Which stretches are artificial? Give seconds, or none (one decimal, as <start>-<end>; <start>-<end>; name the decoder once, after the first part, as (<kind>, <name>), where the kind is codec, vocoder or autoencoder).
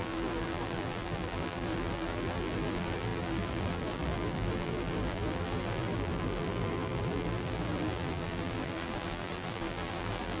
0.0-10.4 (vocoder, BigVGAN v2)